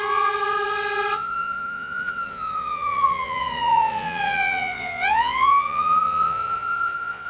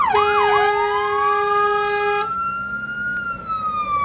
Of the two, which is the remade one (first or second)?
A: first